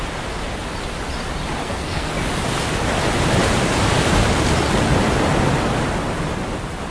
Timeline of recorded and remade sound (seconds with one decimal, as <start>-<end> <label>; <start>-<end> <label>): 0.0-1.6 recorded; 1.6-2.1 remade; 2.1-6.9 recorded